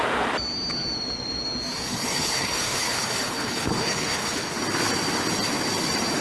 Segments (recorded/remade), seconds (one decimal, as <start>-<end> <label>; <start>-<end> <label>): 0.0-1.9 recorded; 1.9-4.5 remade; 4.5-6.2 recorded